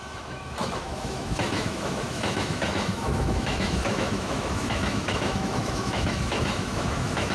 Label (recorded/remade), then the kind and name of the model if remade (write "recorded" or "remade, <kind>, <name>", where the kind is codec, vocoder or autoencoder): remade, autoencoder, DAC-VAE